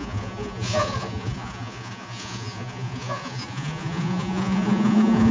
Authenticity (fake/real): fake